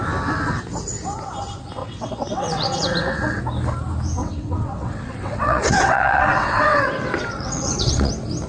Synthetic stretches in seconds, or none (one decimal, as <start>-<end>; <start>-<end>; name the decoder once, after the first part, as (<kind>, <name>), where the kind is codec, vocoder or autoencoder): 1.8-3.4 (vocoder, WaveNeXt); 4.2-8.1

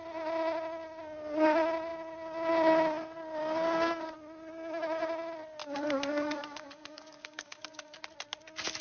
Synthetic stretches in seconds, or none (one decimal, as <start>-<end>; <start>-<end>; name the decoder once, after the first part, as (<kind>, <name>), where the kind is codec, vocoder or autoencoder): 5.6-8.0 (codec, DAC)

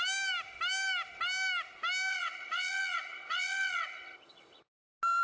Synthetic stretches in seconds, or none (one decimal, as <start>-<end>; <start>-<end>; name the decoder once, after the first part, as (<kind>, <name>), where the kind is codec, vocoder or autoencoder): 2.1-4.6 (vocoder, WaveNeXt)

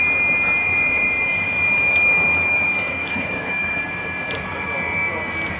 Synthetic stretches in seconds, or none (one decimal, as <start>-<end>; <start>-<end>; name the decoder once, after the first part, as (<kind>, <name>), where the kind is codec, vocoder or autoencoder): 0.6-3.8 (codec, DAC)

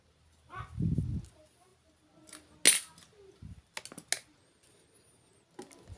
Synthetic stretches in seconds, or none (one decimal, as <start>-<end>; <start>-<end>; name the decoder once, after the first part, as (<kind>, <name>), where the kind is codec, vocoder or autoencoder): none

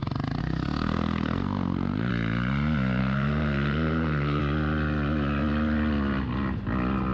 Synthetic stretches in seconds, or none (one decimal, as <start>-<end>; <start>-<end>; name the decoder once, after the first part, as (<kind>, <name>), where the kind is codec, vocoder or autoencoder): 0.4-2.1 (codec, SNAC); 3.0-4.4